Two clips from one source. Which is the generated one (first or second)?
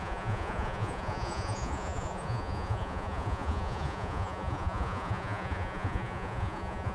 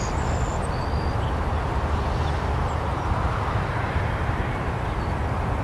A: first